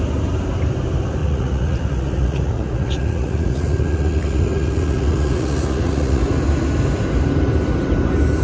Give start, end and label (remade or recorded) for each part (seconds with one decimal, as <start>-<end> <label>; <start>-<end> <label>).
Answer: 0.0-1.2 recorded; 1.2-6.2 remade; 6.2-8.4 recorded